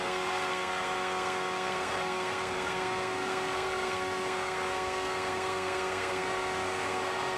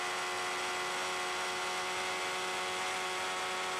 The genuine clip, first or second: second